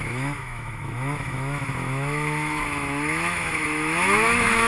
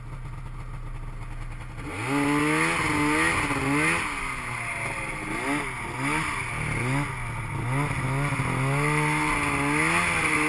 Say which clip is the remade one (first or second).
first